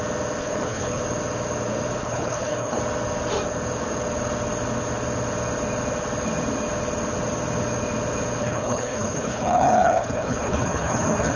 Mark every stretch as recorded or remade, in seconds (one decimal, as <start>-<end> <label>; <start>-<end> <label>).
0.0-0.4 recorded; 0.4-1.0 remade; 1.0-2.0 recorded; 2.0-2.8 remade; 2.8-8.4 recorded; 8.4-11.4 remade